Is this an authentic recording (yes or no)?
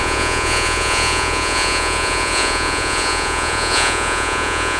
no